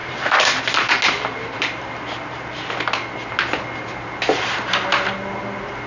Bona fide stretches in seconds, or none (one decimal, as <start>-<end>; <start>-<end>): 0.6-1.4; 2.6-5.9